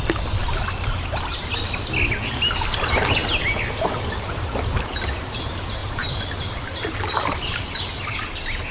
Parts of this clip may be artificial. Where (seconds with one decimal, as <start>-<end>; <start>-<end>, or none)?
0.4-1.4; 5.8-7.6